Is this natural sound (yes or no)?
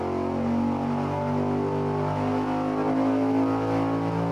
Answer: yes